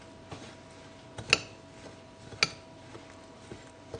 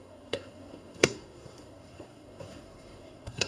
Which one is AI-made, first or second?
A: second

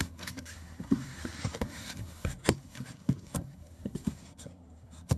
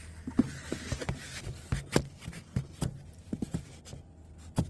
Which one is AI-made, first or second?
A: first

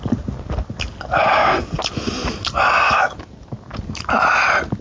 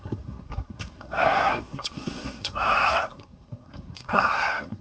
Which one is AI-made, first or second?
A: second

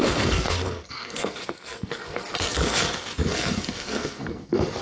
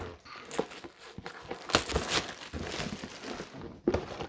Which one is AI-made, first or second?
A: first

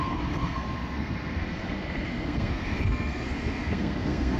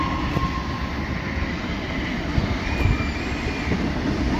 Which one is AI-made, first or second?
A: first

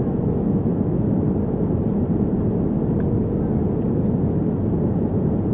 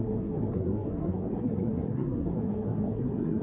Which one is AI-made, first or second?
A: second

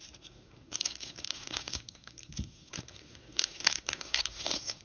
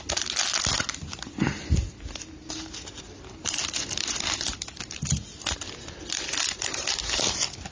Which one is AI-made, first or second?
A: first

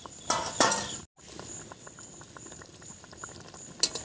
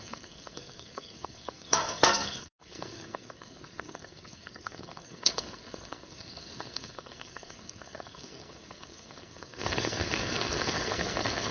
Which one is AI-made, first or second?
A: second